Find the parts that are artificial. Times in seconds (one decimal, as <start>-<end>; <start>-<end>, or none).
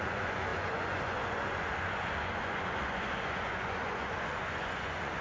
0.0-5.2